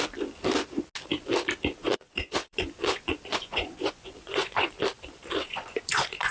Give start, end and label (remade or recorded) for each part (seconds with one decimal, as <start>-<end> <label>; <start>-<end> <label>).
0.0-1.8 recorded; 1.8-4.7 remade; 4.7-5.4 recorded; 5.4-6.3 remade